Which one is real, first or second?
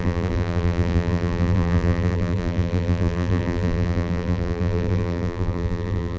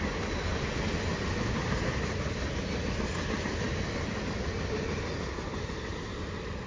second